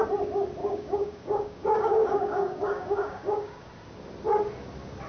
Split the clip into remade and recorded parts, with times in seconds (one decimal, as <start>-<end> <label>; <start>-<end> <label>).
0.0-0.6 recorded; 0.6-3.7 remade; 3.7-5.1 recorded